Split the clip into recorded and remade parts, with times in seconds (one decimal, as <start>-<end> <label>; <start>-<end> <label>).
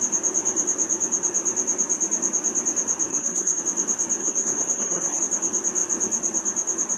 0.0-3.1 recorded; 3.1-3.6 remade; 3.6-4.2 recorded; 4.2-5.2 remade; 5.2-7.0 recorded